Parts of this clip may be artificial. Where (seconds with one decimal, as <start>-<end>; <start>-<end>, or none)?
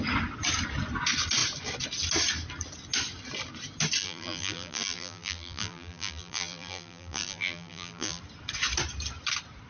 4.0-8.2